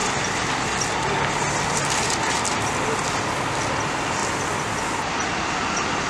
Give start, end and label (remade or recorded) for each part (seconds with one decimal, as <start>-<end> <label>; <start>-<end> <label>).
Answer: 0.0-6.1 recorded